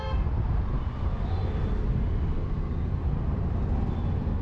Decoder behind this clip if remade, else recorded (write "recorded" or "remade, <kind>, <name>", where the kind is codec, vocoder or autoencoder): recorded